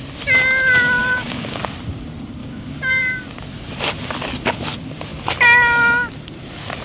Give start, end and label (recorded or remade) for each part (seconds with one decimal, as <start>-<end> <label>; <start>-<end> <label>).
0.0-1.0 recorded; 1.0-1.6 remade; 1.6-2.4 recorded; 2.4-3.0 remade; 3.0-6.8 recorded